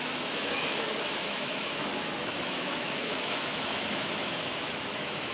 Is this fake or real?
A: fake